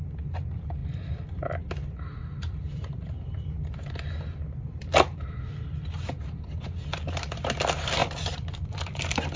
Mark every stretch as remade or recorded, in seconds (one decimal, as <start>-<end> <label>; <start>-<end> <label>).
0.0-0.8 recorded; 0.8-3.7 remade; 3.7-8.0 recorded; 8.0-9.0 remade; 9.0-9.4 recorded